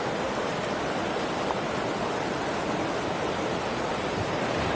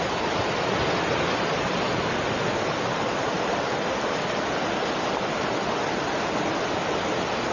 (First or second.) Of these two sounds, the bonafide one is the second